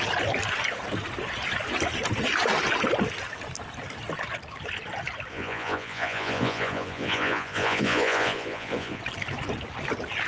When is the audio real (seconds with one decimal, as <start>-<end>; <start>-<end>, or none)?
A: 0.0-5.3; 9.0-10.3